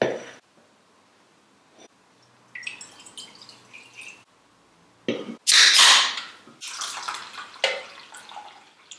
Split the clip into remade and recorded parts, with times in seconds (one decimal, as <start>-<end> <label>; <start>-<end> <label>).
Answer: 0.0-9.0 recorded